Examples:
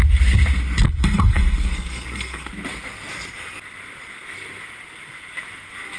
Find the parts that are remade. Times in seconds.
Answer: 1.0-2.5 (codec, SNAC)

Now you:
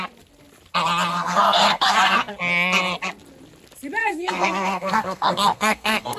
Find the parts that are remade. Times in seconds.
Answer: 1.1-2.3 (codec, SNAC); 4.0-6.2

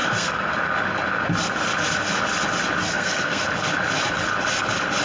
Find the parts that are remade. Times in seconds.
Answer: 0.0-0.5 (codec, SNAC); 2.8-3.4

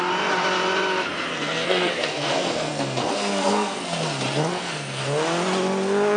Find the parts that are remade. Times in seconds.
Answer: 1.3-4.0 (codec, SNAC); 4.5-5.0

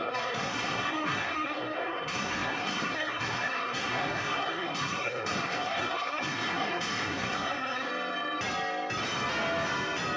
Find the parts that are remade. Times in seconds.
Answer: 0.0-7.9 (codec, SNAC)

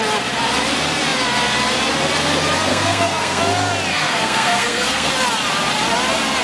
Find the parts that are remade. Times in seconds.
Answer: 2.7-3.4 (codec, SNAC); 3.9-5.1

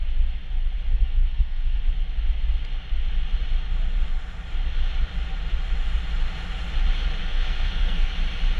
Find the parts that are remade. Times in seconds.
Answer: 0.9-1.8 (codec, SNAC); 7.2-8.1